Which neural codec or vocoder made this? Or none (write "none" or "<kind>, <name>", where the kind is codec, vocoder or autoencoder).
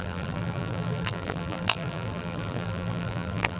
vocoder, BigVGAN v2